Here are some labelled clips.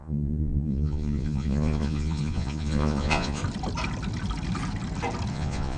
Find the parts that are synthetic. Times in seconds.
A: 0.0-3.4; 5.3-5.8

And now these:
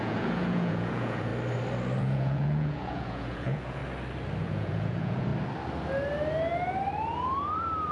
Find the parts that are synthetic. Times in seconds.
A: 0.0-1.3; 2.0-3.8; 4.4-5.3